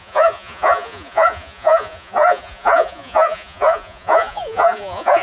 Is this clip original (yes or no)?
no